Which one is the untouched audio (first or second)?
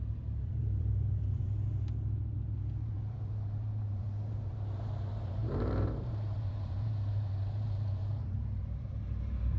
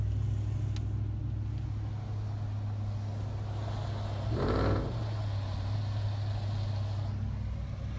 second